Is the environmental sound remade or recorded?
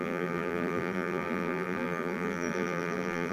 remade